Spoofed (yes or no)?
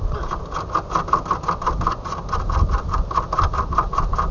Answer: no